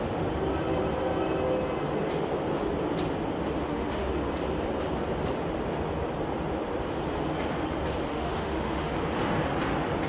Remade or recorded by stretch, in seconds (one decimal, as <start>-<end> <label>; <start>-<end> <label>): 0.0-3.7 recorded; 3.7-4.2 remade; 4.2-8.1 recorded; 8.1-8.9 remade; 8.9-10.1 recorded